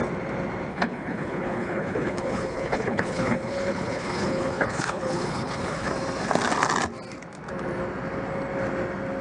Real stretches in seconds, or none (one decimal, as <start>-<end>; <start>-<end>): 0.0-0.7; 5.9-9.2